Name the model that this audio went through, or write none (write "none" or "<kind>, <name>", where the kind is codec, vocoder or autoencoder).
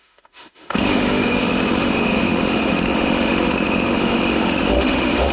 autoencoder, DAC-VAE